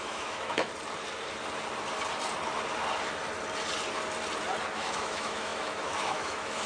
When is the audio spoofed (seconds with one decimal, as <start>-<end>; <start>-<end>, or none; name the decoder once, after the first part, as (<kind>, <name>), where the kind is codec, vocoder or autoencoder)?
0.0-0.7 (autoencoder, DAC-VAE); 4.7-6.7